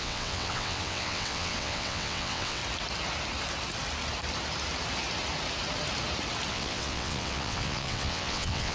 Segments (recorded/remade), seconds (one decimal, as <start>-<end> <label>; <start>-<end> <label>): 0.0-2.6 remade; 2.6-6.5 recorded; 6.5-8.7 remade